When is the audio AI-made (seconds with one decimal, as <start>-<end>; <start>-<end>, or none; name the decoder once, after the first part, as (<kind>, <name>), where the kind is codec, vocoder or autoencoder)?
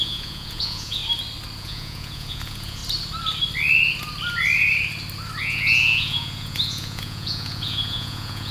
0.0-1.0 (vocoder, Vocos); 1.6-2.8; 5.4-8.5